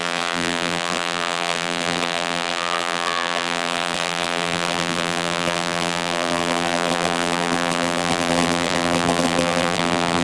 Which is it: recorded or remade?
remade